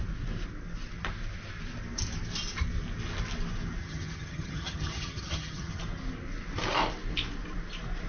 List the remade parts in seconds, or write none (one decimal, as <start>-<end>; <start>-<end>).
3.8-5.8